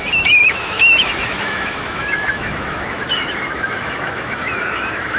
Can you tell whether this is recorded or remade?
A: remade